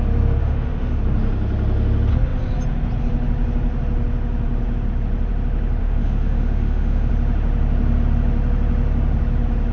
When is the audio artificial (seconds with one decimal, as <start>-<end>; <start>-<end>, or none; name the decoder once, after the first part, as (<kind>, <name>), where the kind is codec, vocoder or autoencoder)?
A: 0.4-1.0 (autoencoder, DAC-VAE); 5.8-7.1